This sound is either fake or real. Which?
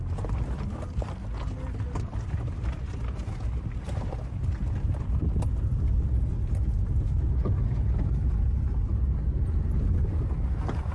real